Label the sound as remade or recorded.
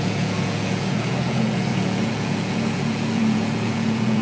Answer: remade